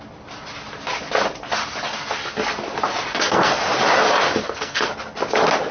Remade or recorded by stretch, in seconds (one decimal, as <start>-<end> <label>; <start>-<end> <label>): 0.0-3.1 recorded; 3.1-3.6 remade; 3.6-4.4 recorded; 4.4-4.9 remade; 4.9-5.7 recorded